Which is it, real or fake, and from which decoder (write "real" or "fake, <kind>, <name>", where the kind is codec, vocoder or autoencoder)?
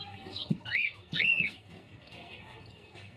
fake, codec, SNAC